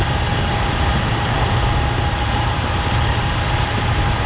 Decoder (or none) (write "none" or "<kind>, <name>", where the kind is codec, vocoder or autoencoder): none